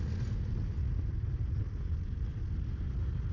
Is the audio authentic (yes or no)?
yes